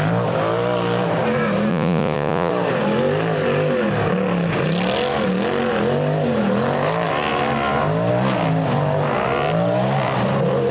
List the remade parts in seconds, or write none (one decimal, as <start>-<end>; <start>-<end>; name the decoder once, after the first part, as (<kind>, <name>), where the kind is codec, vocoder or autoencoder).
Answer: 1.7-2.5 (vocoder, Vocos)